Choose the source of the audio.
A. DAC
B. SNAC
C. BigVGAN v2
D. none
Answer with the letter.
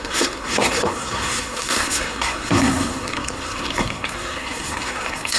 B